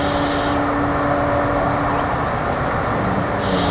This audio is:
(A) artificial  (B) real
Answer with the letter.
B